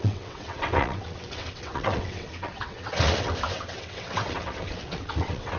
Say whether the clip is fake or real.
fake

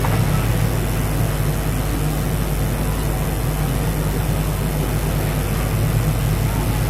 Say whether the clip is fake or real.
real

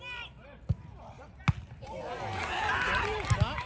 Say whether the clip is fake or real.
real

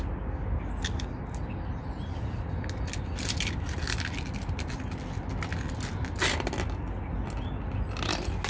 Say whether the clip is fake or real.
real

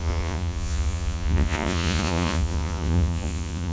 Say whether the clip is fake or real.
fake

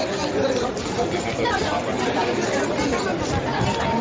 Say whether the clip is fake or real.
real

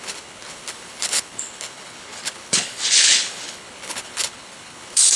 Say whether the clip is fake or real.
fake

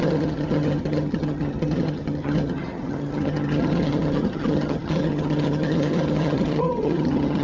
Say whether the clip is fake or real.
fake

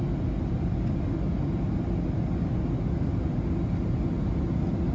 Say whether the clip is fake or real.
real